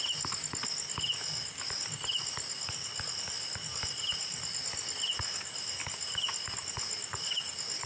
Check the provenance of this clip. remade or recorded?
recorded